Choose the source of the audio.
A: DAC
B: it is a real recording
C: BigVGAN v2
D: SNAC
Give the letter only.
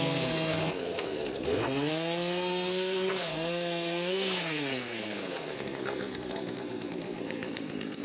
D